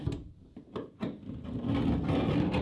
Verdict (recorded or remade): recorded